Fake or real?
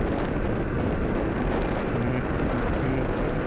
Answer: real